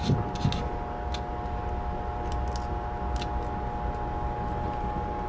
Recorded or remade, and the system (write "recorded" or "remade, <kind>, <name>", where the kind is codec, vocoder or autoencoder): recorded